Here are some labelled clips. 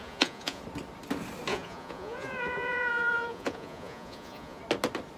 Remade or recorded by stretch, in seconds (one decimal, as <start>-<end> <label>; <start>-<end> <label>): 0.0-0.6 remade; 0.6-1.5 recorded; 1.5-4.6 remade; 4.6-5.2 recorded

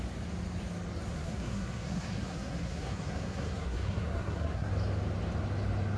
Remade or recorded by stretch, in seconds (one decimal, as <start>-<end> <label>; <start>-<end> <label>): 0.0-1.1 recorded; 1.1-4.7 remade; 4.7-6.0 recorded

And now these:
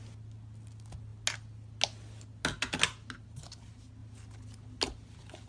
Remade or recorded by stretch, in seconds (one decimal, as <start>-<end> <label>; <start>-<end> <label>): 0.0-5.5 recorded